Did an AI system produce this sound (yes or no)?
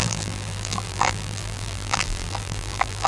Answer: yes